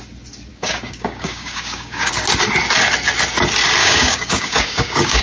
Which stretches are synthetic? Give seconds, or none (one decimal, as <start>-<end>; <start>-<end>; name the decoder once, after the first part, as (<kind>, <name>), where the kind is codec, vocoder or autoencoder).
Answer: 0.5-2.1 (codec, DAC); 3.8-5.2